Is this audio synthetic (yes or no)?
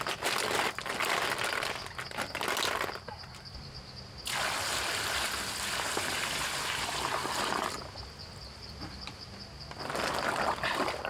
no